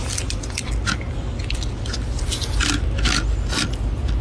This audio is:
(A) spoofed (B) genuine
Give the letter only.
B